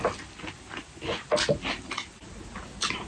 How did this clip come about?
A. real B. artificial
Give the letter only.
A